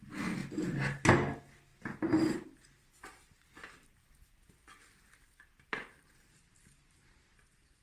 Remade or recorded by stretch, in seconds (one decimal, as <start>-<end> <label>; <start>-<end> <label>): 0.0-7.8 recorded